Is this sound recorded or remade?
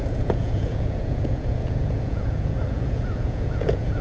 remade